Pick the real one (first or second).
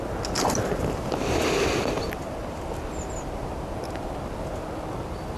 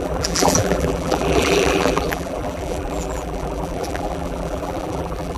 first